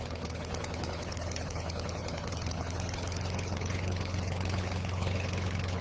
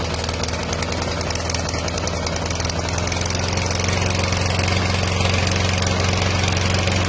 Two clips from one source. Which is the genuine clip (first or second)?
second